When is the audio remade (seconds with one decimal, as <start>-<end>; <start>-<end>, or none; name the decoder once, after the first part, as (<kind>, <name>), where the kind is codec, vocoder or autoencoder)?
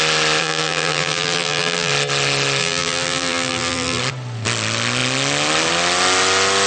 0.4-1.9 (vocoder, BigVGAN v2); 2.6-4.0